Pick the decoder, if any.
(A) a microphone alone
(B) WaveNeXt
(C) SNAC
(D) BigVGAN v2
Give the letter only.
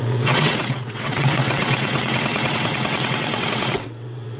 B